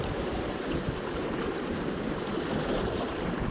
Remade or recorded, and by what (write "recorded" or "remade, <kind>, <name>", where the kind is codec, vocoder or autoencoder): remade, vocoder, BigVGAN v2